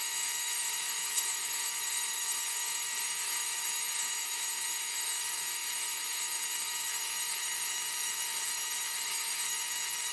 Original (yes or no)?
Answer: no